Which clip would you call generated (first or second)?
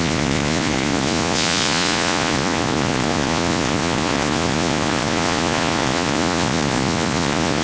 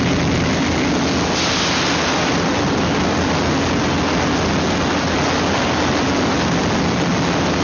first